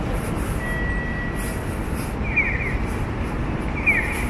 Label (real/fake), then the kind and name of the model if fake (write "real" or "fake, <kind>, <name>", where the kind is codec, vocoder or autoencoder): real